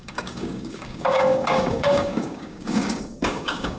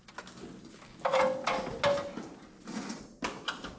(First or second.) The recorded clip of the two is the second